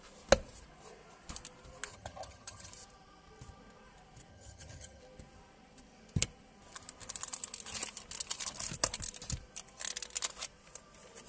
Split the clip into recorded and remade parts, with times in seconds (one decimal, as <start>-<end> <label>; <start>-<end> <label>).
0.0-1.9 recorded; 1.9-2.7 remade; 2.7-4.3 recorded; 4.3-5.0 remade; 5.0-11.3 recorded